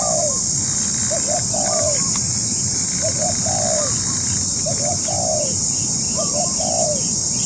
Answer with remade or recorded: recorded